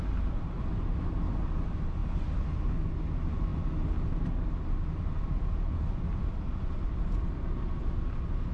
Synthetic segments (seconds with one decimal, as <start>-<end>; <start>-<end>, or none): none